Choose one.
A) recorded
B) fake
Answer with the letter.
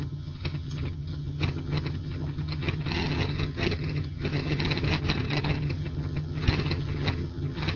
B